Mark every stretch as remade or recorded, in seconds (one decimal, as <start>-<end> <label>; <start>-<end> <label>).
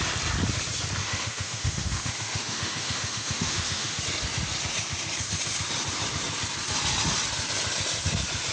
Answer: 0.0-1.0 recorded; 1.0-4.0 remade; 4.0-8.5 recorded